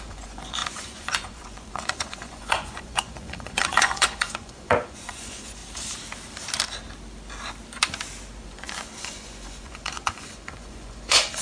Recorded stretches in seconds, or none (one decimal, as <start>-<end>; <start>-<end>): 5.6-8.4